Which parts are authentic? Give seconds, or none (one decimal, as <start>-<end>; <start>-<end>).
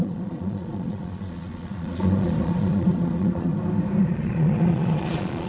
3.5-4.0